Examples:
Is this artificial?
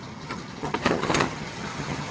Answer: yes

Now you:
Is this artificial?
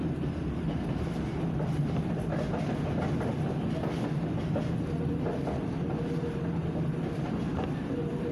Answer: no